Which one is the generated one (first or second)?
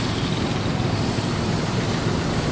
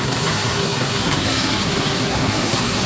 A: second